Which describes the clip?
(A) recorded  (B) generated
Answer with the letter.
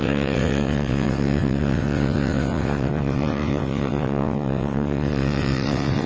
B